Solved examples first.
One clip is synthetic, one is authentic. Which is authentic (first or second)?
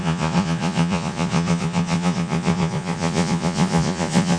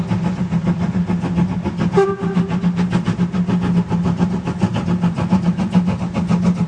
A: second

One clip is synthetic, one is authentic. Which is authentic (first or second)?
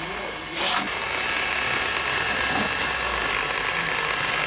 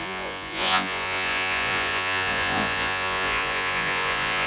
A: first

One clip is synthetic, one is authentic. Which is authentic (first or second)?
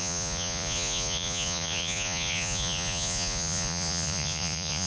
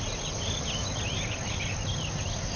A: second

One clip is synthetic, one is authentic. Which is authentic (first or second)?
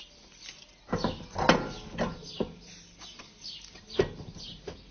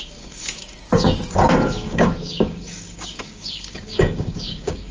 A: first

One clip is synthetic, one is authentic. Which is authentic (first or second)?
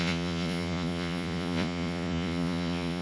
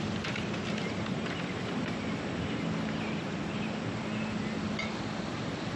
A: second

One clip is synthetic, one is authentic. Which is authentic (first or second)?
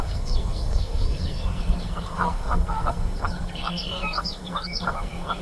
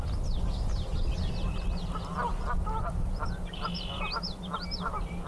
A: second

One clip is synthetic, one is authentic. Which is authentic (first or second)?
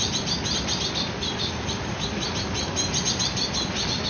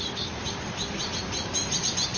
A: second